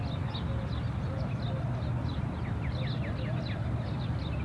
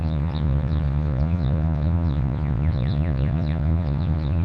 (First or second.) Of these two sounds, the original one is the first